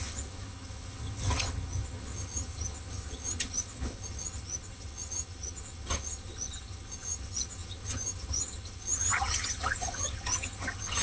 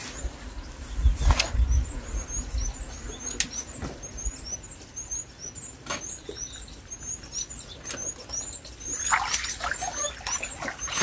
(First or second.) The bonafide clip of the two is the second